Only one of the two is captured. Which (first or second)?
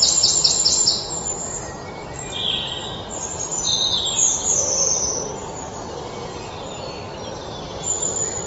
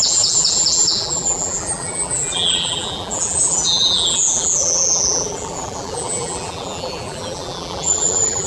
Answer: first